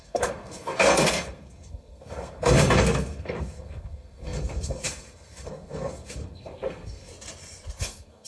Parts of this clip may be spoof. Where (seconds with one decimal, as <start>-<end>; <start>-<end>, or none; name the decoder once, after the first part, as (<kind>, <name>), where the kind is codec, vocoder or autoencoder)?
0.0-7.1 (codec, SNAC); 7.8-8.3